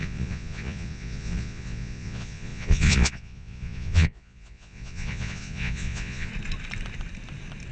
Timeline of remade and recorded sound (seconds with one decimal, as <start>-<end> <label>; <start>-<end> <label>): 0.0-6.3 remade; 6.3-7.7 recorded